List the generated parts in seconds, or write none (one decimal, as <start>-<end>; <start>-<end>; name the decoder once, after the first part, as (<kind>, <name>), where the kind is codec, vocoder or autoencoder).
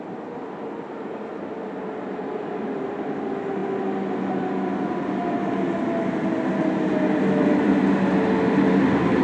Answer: none